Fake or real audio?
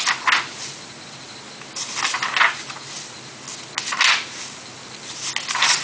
real